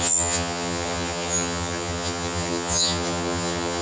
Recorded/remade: remade